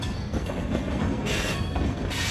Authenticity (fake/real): fake